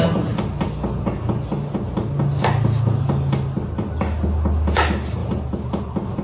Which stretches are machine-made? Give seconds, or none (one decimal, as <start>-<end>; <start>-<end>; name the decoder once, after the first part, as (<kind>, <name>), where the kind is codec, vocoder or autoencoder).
none